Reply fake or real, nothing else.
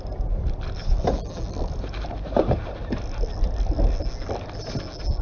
real